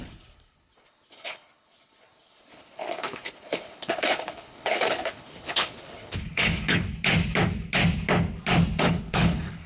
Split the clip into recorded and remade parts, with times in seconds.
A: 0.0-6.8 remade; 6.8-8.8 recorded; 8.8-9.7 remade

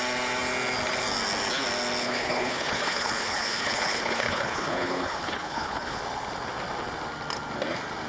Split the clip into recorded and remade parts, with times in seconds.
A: 0.0-2.0 recorded; 2.0-6.0 remade; 6.0-8.1 recorded

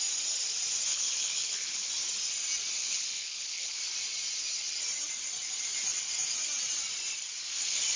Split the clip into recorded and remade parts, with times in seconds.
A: 0.0-0.9 recorded; 0.9-1.9 remade; 1.9-2.8 recorded; 2.8-3.8 remade; 3.8-8.0 recorded

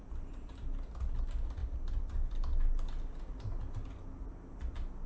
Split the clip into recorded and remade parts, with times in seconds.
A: 0.0-5.1 recorded

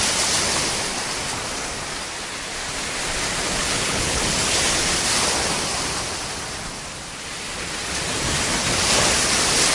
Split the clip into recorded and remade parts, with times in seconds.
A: 0.0-3.6 recorded; 3.6-4.2 remade; 4.2-9.7 recorded

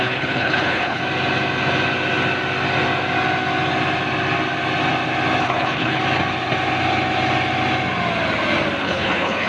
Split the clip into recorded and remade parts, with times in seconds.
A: 0.0-1.0 remade; 1.0-5.4 recorded; 5.4-6.0 remade; 6.0-8.8 recorded; 8.8-9.5 remade

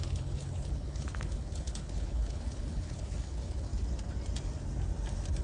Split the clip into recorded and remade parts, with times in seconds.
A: 0.0-3.7 remade; 3.7-5.4 recorded

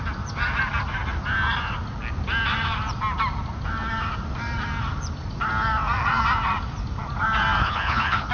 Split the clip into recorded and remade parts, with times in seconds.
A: 0.0-7.6 recorded; 7.6-8.3 remade